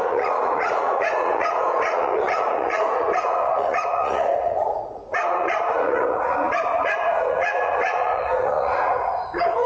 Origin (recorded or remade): remade